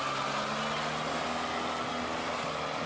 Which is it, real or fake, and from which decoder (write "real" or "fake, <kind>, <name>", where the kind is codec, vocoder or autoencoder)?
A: real